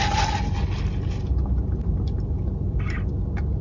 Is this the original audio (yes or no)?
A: yes